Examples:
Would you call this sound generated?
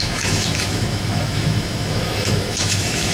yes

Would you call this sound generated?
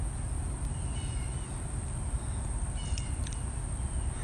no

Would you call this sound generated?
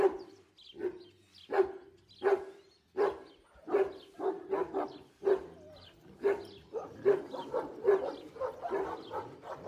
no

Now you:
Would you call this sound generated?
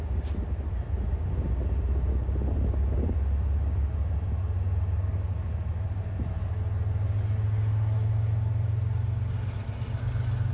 no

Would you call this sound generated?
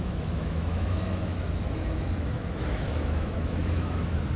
yes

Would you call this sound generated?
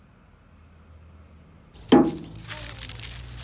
no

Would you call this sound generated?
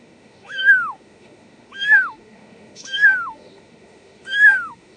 yes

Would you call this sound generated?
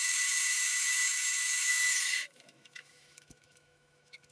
yes